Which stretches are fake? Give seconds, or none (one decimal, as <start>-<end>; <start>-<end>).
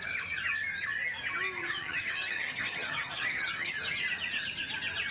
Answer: 1.6-3.8